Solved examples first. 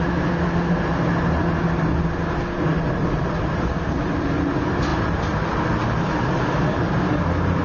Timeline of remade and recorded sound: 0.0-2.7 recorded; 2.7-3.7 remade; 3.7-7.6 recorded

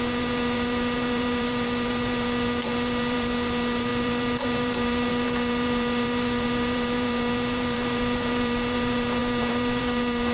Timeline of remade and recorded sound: 0.0-10.3 remade

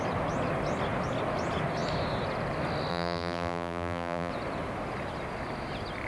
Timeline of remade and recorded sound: 0.0-2.9 recorded; 2.9-4.3 remade; 4.3-6.1 recorded

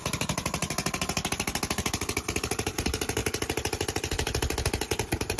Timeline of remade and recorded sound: 0.0-3.2 remade; 3.2-4.9 recorded; 4.9-5.4 remade

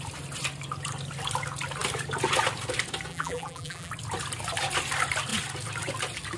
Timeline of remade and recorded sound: 0.0-3.1 recorded; 3.1-3.9 remade; 3.9-6.4 recorded

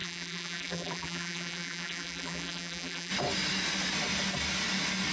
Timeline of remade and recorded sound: 0.0-3.1 remade; 3.1-5.1 recorded

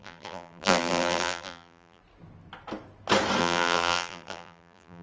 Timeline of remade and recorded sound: 0.0-2.0 remade; 2.0-3.4 recorded; 3.4-5.0 remade